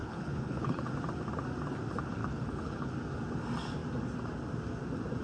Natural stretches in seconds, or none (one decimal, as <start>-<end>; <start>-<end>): 0.9-2.2; 2.9-5.2